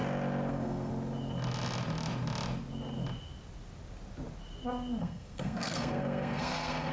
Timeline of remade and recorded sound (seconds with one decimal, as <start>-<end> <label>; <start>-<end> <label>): 0.0-0.5 recorded; 0.5-0.9 remade; 0.9-5.0 recorded; 5.0-6.9 remade